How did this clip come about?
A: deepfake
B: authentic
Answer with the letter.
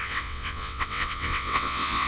A